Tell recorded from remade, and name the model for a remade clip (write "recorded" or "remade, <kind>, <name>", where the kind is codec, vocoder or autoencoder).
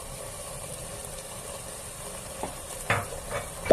recorded